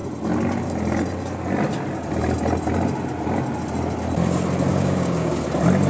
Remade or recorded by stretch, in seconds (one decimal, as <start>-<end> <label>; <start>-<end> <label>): 0.0-4.7 recorded; 4.7-5.3 remade; 5.3-5.9 recorded